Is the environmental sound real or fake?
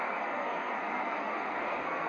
fake